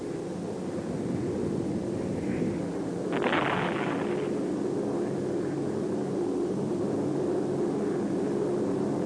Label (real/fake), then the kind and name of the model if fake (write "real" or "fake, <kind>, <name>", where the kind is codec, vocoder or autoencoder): real